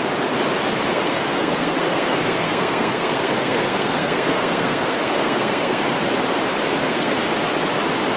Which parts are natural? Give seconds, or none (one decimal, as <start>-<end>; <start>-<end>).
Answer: 0.0-0.9; 5.8-6.8; 7.3-8.2